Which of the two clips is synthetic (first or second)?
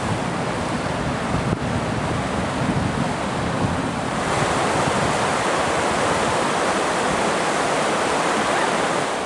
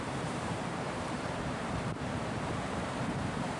second